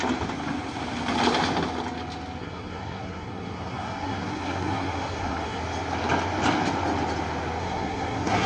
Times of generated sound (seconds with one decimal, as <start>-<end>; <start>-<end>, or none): 2.4-5.6; 7.6-8.5